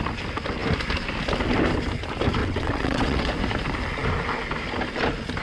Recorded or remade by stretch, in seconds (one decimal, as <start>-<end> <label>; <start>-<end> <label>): 0.0-2.4 recorded; 2.4-3.3 remade; 3.3-5.4 recorded